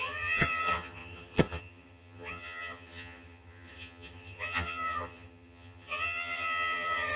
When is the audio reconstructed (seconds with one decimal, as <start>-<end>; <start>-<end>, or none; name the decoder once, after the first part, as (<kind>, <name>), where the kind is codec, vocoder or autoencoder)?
0.0-7.2 (vocoder, HiFi-GAN)